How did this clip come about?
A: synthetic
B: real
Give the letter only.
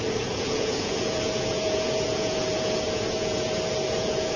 A